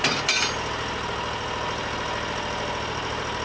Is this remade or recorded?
recorded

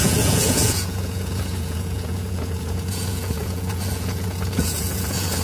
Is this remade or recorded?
remade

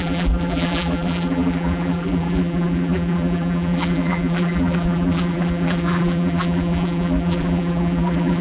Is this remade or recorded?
remade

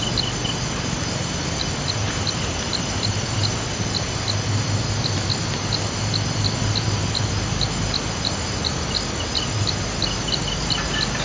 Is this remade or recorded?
recorded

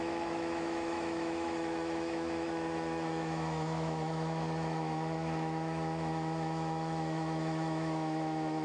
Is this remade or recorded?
remade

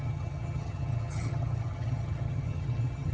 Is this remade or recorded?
remade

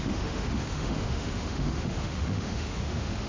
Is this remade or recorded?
remade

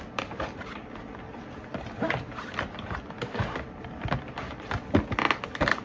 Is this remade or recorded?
recorded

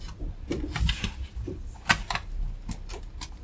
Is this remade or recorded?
recorded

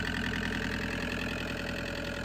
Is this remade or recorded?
recorded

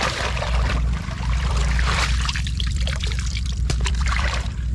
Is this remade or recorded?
remade